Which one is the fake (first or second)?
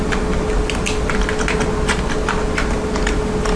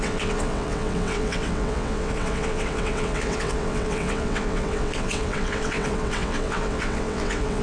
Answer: second